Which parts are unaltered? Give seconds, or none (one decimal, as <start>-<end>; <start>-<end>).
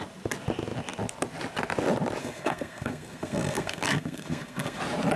0.0-2.2; 4.8-5.2